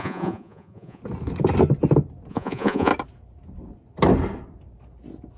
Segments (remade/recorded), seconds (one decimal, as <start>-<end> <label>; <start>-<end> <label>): 0.0-1.0 remade; 1.0-2.3 recorded; 2.3-2.9 remade; 2.9-5.4 recorded